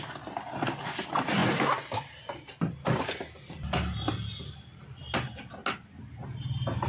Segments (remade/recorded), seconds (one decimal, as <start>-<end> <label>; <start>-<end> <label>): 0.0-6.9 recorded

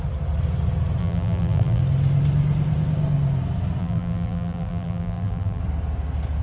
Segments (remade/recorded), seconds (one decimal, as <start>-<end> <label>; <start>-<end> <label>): 0.0-1.0 recorded; 1.0-1.8 remade; 1.8-3.8 recorded; 3.8-5.6 remade; 5.6-6.4 recorded

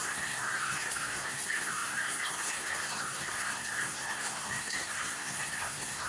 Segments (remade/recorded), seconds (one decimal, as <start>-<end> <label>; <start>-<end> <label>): 0.0-6.1 remade

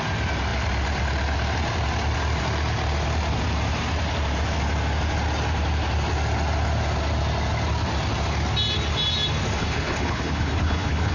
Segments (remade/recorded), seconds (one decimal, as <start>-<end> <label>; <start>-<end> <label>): 0.0-9.6 recorded; 9.6-11.1 remade